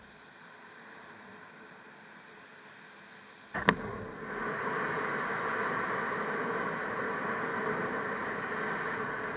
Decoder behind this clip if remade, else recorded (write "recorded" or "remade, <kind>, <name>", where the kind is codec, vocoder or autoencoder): recorded